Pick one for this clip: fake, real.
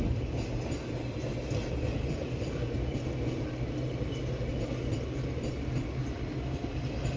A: real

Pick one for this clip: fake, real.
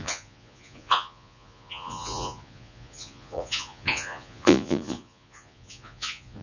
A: fake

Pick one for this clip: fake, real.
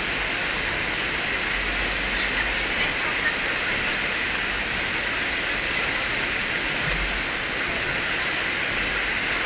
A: real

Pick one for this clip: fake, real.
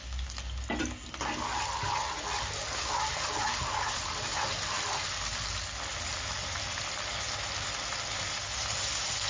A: real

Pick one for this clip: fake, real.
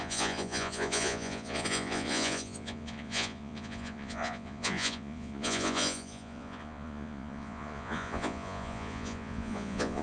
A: fake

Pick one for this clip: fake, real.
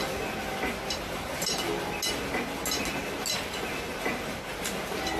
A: real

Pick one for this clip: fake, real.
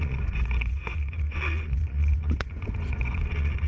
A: fake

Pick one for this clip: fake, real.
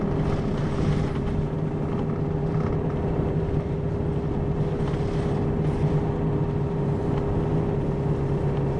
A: real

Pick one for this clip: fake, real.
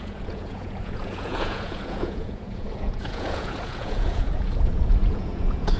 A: fake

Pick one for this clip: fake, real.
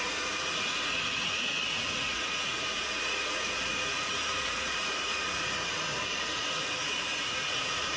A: fake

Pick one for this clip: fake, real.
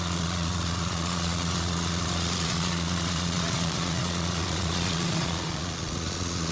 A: fake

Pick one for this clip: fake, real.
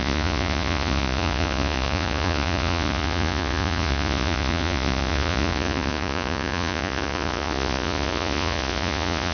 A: fake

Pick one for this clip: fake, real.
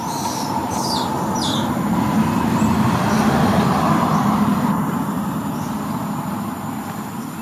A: real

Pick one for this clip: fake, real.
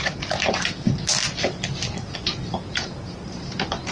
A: real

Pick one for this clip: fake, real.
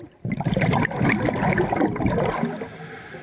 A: real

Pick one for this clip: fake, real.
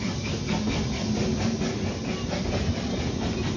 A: real